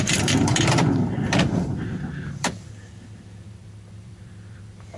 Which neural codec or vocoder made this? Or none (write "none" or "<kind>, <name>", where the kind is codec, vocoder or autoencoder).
vocoder, BigVGAN v2